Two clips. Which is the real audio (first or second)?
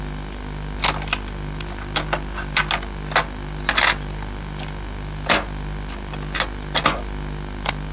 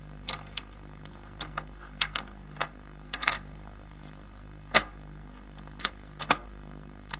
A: first